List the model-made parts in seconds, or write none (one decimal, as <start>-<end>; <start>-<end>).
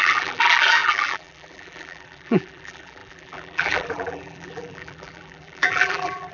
0.0-6.3